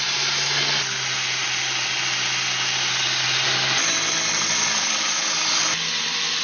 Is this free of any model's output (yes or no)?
yes